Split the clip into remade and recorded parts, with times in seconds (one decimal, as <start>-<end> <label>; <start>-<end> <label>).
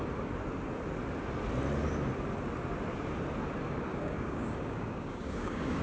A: 0.0-3.9 recorded; 3.9-5.8 remade